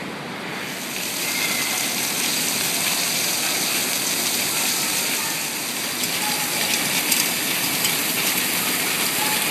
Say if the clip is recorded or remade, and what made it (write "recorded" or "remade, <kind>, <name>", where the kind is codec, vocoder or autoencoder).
recorded